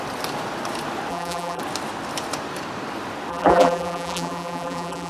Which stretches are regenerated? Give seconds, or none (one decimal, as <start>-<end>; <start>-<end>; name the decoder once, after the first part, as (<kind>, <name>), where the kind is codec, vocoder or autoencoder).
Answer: 1.1-1.6 (vocoder, BigVGAN v2); 3.3-5.1